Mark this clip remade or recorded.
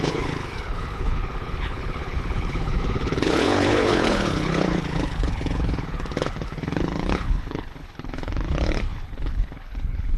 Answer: remade